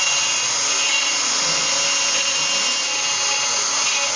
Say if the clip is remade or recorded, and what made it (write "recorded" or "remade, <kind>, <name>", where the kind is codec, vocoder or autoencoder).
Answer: recorded